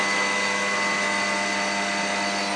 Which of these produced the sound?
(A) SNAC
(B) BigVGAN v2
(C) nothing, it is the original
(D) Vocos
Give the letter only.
C